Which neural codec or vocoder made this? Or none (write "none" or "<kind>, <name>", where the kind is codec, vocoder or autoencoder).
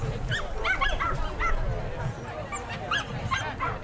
none